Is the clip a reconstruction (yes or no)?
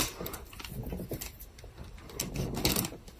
no